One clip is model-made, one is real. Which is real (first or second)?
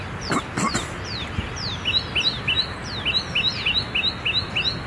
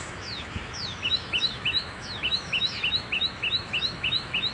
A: first